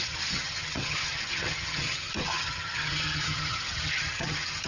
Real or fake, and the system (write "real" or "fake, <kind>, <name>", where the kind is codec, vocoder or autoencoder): fake, vocoder, HiFi-GAN